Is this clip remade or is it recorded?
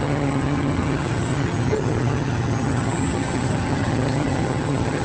remade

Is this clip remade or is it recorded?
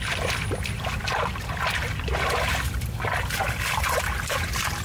recorded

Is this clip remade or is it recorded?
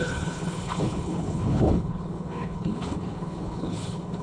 remade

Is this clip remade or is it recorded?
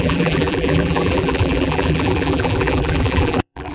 remade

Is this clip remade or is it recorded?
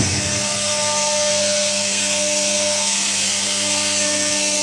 remade